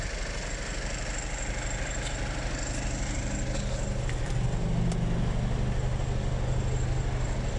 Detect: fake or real real